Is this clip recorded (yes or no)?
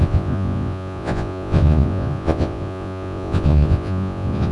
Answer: no